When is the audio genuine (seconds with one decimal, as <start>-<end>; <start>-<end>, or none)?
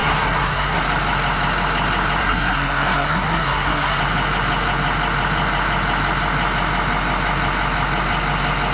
0.8-2.2; 4.0-8.7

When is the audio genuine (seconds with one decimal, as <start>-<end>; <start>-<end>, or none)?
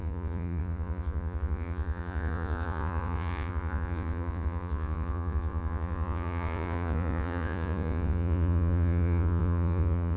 none